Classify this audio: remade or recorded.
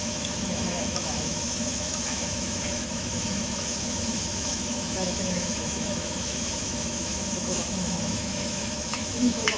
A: remade